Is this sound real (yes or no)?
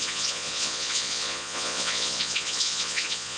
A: no